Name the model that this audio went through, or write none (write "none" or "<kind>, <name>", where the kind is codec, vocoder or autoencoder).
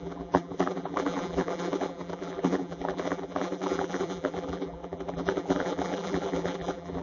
vocoder, BigVGAN v2